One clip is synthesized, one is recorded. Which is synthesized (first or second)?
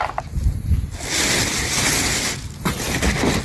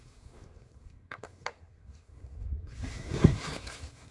second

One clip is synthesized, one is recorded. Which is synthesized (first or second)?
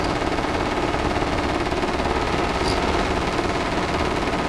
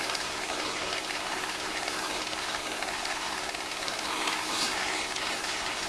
second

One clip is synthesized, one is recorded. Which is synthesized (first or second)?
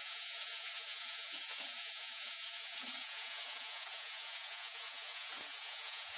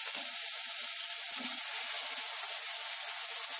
first